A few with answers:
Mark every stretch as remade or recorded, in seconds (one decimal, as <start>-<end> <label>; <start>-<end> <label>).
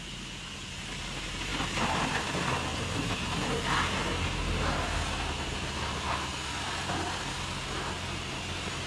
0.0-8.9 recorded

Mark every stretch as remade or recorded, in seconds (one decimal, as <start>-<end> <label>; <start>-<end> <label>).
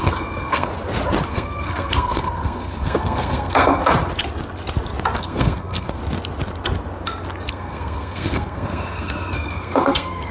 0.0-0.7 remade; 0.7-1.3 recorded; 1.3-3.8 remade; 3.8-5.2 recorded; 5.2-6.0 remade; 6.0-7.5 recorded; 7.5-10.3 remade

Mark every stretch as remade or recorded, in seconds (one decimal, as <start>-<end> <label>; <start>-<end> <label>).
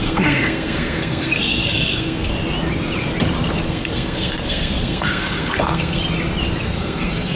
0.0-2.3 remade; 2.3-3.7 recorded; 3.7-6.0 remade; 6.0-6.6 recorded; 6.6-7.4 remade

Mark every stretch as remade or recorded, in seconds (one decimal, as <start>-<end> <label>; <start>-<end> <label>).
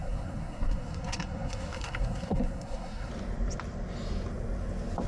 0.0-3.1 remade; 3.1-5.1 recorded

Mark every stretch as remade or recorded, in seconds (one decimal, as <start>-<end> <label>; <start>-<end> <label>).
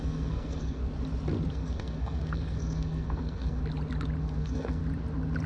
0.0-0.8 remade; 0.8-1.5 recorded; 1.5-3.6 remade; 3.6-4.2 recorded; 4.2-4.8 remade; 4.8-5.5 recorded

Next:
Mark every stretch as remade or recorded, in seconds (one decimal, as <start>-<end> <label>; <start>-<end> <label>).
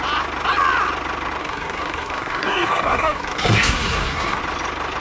0.0-1.4 recorded; 1.4-4.4 remade; 4.4-5.0 recorded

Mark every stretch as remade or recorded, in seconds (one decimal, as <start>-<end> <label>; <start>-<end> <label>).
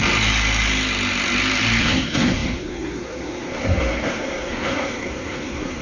0.0-1.8 recorded; 1.8-5.8 remade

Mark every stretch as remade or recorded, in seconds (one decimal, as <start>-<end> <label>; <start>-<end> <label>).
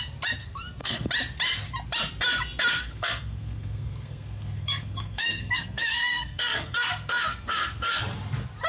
0.0-0.4 recorded; 0.4-1.1 remade; 1.1-2.8 recorded; 2.8-8.0 remade; 8.0-8.7 recorded